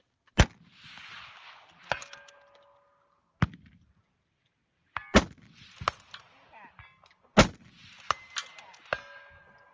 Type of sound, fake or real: real